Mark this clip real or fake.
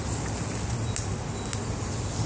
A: real